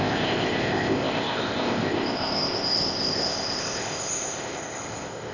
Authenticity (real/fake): fake